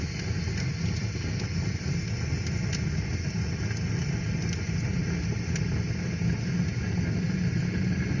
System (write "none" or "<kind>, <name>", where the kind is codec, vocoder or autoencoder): none